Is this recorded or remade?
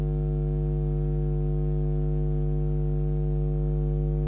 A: recorded